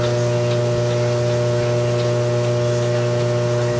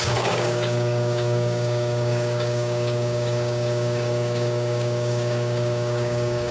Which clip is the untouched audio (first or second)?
first